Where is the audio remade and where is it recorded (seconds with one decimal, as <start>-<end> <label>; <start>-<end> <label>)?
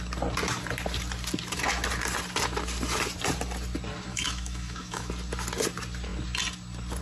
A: 0.0-4.1 recorded; 4.1-5.1 remade; 5.1-7.0 recorded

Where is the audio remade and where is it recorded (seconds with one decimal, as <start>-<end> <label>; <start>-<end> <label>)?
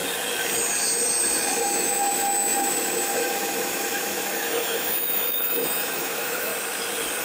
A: 0.0-1.6 recorded; 1.6-6.5 remade; 6.5-7.2 recorded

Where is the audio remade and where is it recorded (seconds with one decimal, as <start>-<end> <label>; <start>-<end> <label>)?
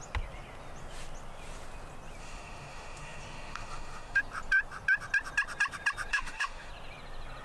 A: 0.0-2.2 recorded; 2.2-4.2 remade; 4.2-6.1 recorded; 6.1-6.7 remade; 6.7-7.4 recorded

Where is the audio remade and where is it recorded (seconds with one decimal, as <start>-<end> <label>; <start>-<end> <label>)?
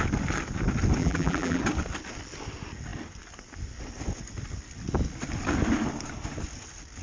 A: 0.0-1.0 recorded; 1.0-1.6 remade; 1.6-7.0 recorded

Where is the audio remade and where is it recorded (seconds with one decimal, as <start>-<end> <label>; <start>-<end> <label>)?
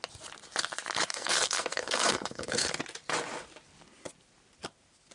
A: 0.0-1.1 recorded; 1.1-2.7 remade; 2.7-5.1 recorded